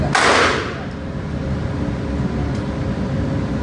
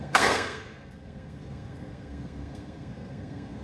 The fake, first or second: second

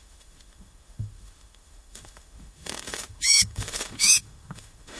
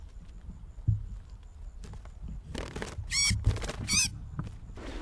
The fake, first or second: first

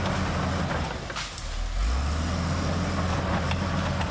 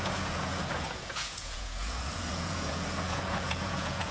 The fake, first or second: second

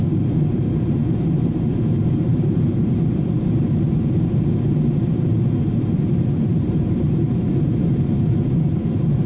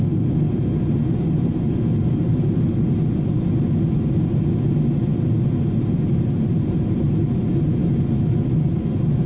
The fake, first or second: first